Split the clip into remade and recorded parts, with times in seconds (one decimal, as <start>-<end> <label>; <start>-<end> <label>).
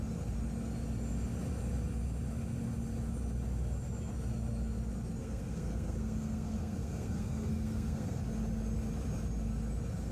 0.0-5.2 recorded; 5.2-8.2 remade; 8.2-10.1 recorded